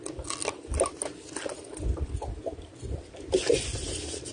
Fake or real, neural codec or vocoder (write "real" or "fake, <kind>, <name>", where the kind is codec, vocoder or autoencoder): real